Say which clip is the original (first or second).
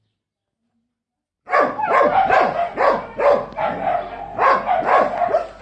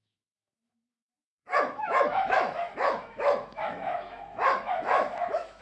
first